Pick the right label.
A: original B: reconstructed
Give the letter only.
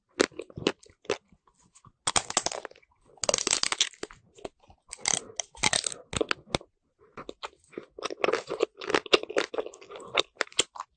A